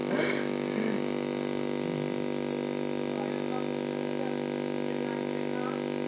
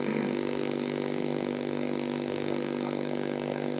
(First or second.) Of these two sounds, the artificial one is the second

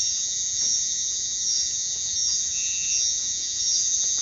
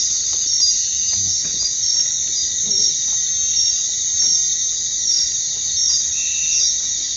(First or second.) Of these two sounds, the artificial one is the first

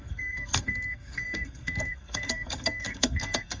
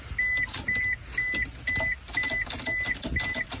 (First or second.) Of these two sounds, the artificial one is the first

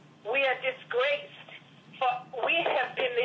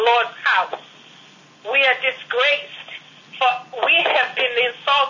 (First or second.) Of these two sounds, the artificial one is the first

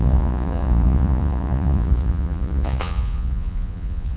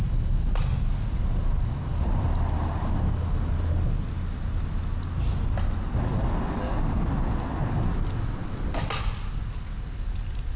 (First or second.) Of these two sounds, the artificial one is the first